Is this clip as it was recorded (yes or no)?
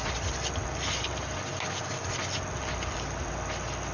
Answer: yes